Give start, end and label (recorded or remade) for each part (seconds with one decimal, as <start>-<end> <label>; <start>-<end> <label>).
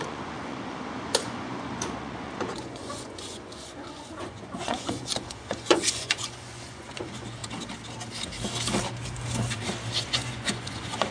0.0-7.4 remade; 7.4-10.0 recorded; 10.0-11.1 remade